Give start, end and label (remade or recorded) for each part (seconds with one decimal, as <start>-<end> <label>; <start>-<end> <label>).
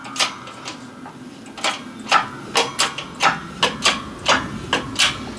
0.0-5.4 recorded